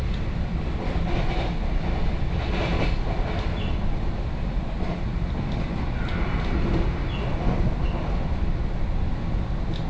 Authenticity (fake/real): real